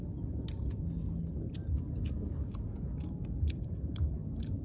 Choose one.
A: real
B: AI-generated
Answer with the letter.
A